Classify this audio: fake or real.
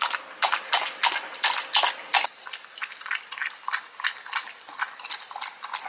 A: real